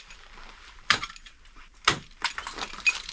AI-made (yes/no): yes